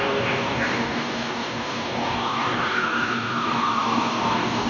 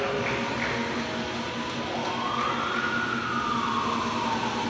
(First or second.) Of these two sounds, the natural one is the second